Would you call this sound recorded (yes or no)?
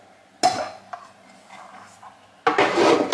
yes